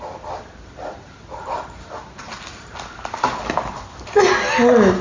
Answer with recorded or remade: recorded